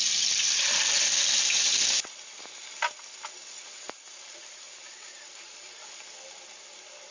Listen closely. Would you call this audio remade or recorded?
recorded